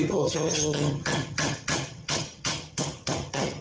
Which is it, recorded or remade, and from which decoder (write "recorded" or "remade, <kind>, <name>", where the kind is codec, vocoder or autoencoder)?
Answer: remade, vocoder, HiFi-GAN